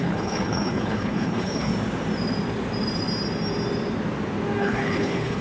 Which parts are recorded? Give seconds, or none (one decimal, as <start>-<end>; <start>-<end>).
1.7-4.6